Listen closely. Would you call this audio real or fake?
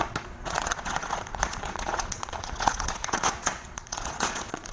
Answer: fake